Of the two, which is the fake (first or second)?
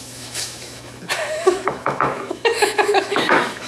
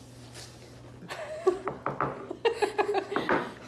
first